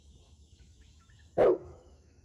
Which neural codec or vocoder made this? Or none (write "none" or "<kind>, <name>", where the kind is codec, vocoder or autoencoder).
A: autoencoder, DAC-VAE